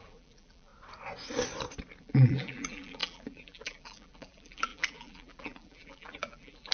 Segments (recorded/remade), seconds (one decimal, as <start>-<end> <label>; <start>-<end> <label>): 0.0-0.7 remade; 0.7-2.0 recorded; 2.0-6.7 remade